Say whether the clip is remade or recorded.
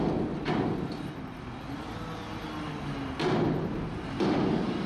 recorded